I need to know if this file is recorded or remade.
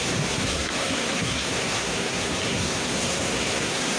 remade